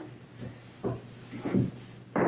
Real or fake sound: real